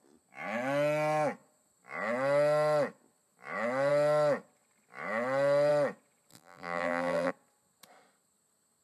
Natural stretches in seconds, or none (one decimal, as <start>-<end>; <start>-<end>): 0.0-6.3; 7.3-8.8